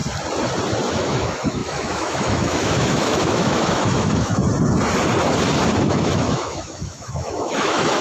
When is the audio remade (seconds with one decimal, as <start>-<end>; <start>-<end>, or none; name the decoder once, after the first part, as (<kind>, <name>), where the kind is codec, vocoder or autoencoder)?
0.9-4.4 (autoencoder, DAC-VAE); 5.8-8.0